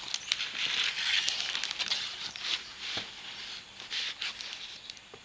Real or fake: real